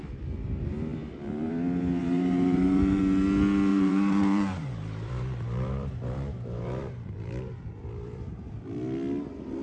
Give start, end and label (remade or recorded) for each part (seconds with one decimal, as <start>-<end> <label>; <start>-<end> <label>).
0.0-2.0 recorded; 2.0-3.0 remade; 3.0-3.7 recorded; 3.7-8.6 remade; 8.6-9.6 recorded